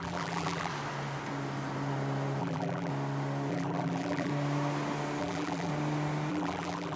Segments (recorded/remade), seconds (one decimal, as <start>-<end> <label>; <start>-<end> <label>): 0.0-0.7 remade; 0.7-2.4 recorded; 2.4-2.9 remade; 2.9-3.5 recorded; 3.5-4.3 remade; 4.3-5.2 recorded; 5.2-5.7 remade; 5.7-6.3 recorded; 6.3-7.0 remade